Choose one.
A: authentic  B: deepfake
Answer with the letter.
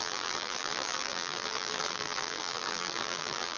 B